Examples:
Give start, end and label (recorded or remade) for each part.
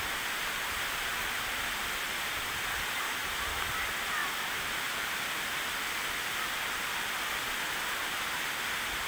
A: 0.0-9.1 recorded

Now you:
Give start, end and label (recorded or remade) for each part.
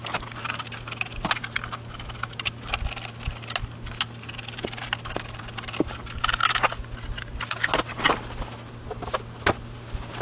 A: 0.0-10.2 recorded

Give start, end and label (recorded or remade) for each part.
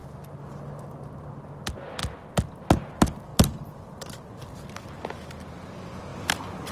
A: 0.0-3.3 recorded; 3.3-4.5 remade; 4.5-6.1 recorded; 6.1-6.7 remade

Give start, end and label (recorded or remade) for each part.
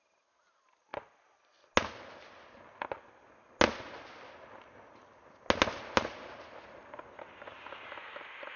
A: 0.0-8.6 recorded